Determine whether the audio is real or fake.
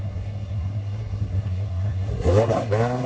fake